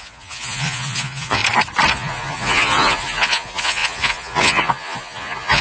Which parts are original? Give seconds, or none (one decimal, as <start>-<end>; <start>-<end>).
1.4-1.9